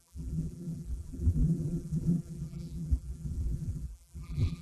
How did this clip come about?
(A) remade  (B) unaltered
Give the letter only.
A